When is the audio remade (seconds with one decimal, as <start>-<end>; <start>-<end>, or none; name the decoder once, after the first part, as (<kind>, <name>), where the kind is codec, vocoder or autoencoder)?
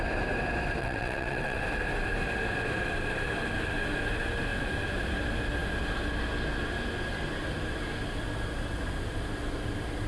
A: 0.8-1.6 (vocoder, WaveNeXt)